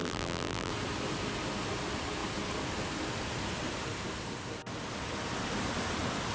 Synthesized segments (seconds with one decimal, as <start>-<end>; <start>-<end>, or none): 0.0-0.7